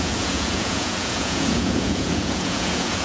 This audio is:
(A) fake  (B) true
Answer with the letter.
A